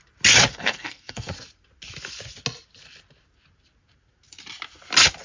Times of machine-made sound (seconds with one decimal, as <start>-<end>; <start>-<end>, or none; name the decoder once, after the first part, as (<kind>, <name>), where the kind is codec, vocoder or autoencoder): 0.5-1.3 (codec, SNAC)